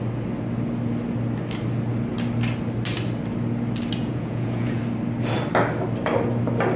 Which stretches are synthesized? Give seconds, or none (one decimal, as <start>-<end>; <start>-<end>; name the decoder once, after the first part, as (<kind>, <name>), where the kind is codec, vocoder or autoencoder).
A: 4.0-4.8 (vocoder, Vocos)